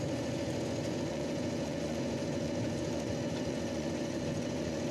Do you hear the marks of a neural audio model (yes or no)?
yes